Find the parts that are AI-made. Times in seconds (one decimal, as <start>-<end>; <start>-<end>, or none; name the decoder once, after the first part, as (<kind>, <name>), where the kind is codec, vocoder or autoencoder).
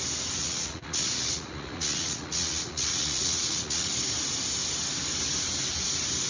0.4-3.9 (vocoder, Vocos)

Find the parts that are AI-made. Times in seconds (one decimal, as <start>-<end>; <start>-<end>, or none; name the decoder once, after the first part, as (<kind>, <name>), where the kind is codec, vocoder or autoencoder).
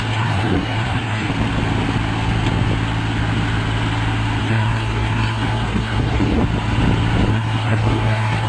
0.0-1.3 (codec, SNAC); 4.4-6.4; 7.3-8.5